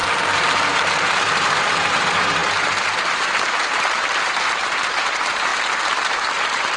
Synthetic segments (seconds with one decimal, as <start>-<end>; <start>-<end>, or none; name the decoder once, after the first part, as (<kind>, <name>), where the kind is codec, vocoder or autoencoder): 0.7-5.5 (vocoder, BigVGAN v2); 6.1-6.8